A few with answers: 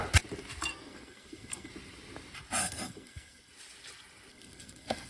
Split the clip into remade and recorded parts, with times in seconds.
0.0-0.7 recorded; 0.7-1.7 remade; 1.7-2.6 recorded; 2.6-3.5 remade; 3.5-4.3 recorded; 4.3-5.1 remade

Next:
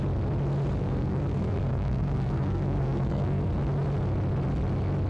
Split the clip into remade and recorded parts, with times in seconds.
0.0-0.8 recorded; 0.8-3.5 remade; 3.5-5.1 recorded

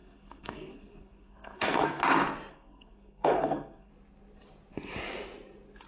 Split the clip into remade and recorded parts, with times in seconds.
0.0-2.0 remade; 2.0-2.5 recorded; 2.5-3.9 remade; 3.9-5.9 recorded

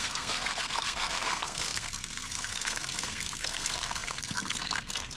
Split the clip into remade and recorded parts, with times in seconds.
0.0-5.2 remade

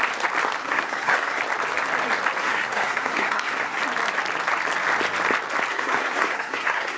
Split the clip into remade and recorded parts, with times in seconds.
0.0-0.6 recorded; 0.6-1.4 remade; 1.4-2.4 recorded; 2.4-3.8 remade; 3.8-5.7 recorded; 5.7-7.0 remade

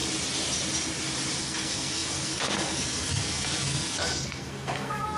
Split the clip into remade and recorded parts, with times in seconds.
0.0-1.4 recorded; 1.4-5.2 remade

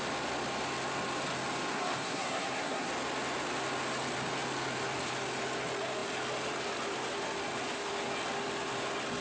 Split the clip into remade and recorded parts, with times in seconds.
0.0-1.7 recorded; 1.7-2.9 remade; 2.9-9.2 recorded

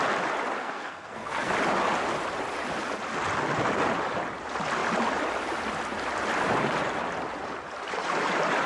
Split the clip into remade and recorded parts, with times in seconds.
0.0-0.6 recorded; 0.6-1.5 remade; 1.5-8.7 recorded